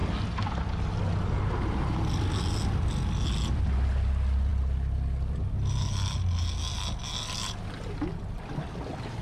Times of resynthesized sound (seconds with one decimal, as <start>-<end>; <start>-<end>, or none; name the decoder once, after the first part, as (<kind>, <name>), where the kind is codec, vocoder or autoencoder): none